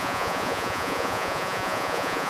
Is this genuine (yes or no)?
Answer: no